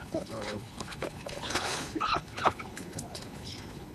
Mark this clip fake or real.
fake